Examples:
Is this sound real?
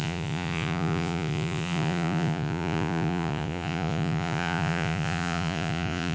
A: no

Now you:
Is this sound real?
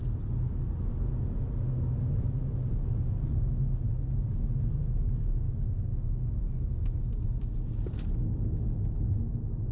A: yes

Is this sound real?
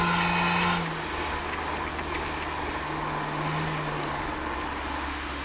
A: yes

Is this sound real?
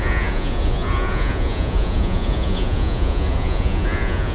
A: no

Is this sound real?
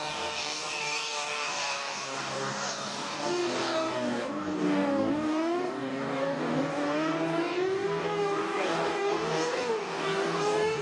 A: no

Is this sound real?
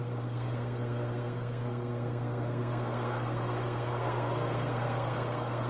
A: no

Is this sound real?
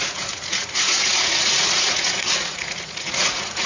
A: no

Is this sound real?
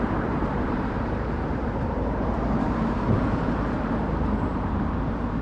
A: no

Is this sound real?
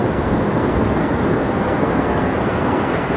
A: no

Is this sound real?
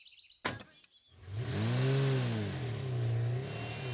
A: yes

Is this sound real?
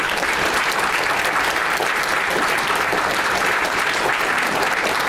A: no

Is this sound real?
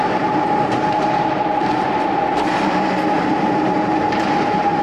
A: no